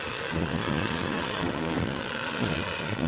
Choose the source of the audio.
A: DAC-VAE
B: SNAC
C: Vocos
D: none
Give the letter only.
C